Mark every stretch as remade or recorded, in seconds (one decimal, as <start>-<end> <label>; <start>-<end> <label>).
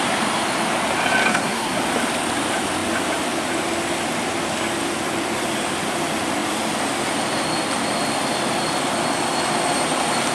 0.0-1.3 recorded; 1.3-1.8 remade; 1.8-10.3 recorded